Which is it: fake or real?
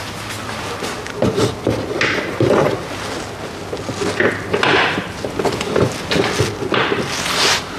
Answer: real